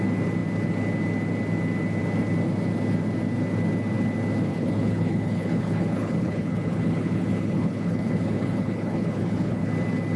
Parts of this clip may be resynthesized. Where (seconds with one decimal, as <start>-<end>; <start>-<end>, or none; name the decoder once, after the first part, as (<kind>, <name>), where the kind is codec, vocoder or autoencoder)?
4.5-9.7 (codec, HILCodec)